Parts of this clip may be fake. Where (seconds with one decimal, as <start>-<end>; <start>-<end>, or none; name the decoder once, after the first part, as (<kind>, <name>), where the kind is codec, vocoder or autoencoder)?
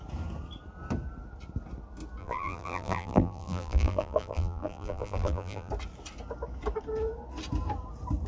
2.2-5.7 (vocoder, BigVGAN v2)